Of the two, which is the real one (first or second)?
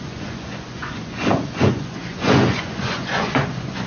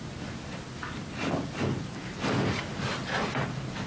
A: second